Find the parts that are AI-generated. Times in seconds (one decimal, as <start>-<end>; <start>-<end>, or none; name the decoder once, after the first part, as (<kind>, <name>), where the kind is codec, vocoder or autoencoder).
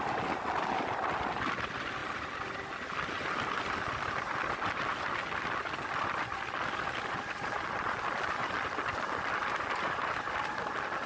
none